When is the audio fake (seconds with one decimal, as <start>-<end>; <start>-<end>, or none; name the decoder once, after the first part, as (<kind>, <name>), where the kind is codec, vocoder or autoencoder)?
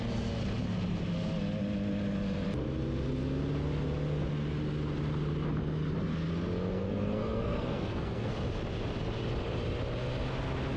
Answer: 6.7-8.3 (codec, SNAC)